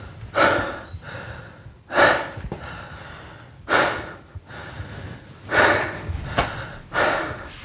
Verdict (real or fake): real